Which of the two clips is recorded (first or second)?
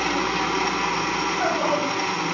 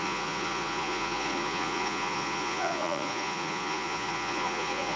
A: first